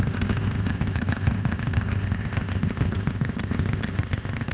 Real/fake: fake